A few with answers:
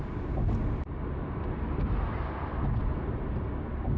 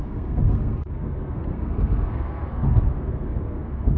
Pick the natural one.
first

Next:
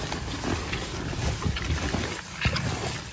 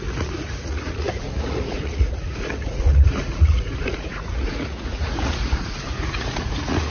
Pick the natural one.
first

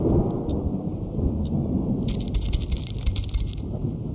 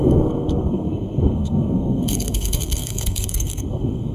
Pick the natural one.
first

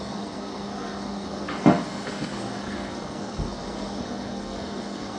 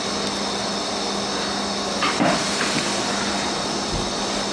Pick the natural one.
second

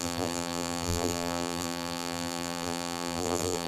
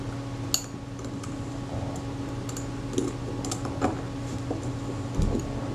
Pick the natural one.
second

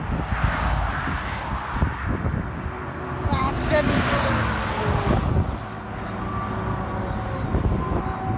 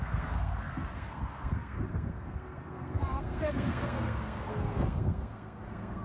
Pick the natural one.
first